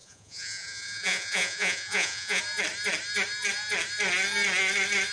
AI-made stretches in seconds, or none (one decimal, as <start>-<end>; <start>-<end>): 0.0-2.4